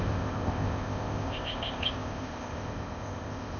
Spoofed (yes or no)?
yes